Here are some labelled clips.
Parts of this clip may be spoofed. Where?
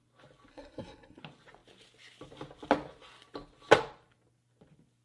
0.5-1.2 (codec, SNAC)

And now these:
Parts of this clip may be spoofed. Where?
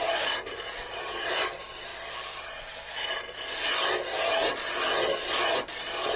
none